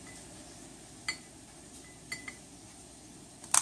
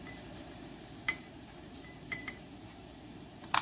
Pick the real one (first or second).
first